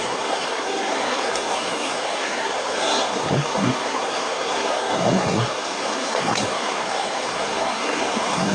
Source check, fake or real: fake